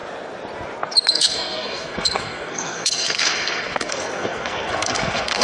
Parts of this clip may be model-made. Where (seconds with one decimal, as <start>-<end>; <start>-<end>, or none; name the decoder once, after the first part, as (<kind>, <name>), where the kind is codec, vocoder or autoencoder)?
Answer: 1.1-5.4 (codec, SNAC)

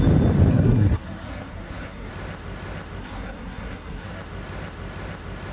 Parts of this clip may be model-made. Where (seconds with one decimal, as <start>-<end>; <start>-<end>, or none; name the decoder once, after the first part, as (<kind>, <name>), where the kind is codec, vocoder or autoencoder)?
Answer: 0.5-2.1 (codec, SNAC); 3.0-4.2

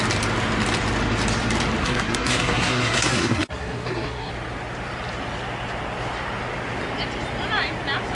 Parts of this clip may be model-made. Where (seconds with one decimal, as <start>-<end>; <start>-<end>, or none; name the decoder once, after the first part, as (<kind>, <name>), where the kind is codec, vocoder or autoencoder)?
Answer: 1.8-4.3 (codec, SNAC)

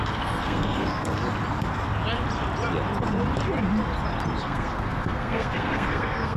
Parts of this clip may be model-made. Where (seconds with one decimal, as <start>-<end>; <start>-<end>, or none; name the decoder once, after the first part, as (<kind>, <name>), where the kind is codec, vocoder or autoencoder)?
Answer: 0.0-1.2 (codec, SNAC); 4.4-6.4

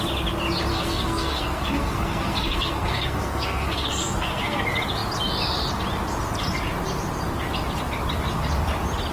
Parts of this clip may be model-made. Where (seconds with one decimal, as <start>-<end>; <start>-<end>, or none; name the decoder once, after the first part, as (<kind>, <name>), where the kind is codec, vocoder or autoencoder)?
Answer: 0.7-4.6 (codec, SNAC)

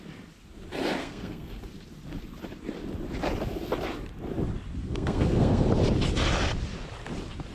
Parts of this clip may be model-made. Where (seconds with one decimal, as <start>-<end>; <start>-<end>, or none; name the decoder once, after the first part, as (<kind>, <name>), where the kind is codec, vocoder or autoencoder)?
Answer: 1.0-1.6 (codec, SNAC); 4.8-5.7

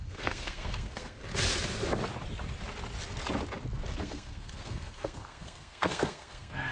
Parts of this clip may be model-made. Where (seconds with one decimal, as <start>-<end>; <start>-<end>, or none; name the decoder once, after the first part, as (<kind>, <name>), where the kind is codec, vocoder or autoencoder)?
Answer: 0.0-1.2 (codec, SNAC); 4.0-6.7